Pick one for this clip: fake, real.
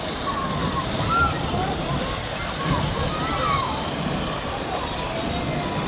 real